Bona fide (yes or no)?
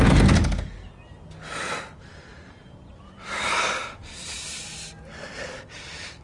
yes